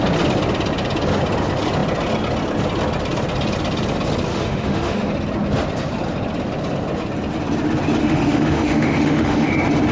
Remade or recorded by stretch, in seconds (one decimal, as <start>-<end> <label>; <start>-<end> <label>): 0.0-4.3 recorded; 4.3-5.1 remade; 5.1-8.0 recorded; 8.0-9.5 remade; 9.5-9.9 recorded